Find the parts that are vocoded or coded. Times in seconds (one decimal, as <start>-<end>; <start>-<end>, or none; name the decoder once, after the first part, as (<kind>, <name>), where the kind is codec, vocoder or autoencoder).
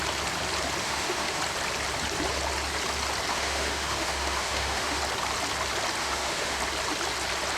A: 0.8-1.4 (autoencoder, DAC-VAE); 3.3-5.0; 6.0-6.6